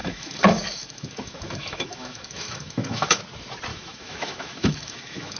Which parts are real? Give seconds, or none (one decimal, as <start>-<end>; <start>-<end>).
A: 3.2-3.7